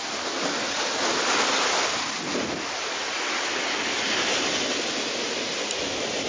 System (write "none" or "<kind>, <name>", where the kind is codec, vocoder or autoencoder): none